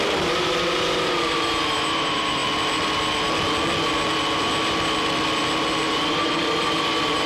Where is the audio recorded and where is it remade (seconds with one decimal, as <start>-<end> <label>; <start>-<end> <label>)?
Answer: 0.0-2.4 remade; 2.4-6.1 recorded; 6.1-7.3 remade